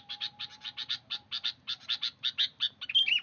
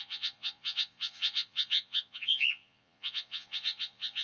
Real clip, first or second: first